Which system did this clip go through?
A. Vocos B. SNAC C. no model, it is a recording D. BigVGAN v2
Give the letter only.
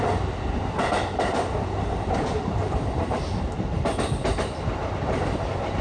C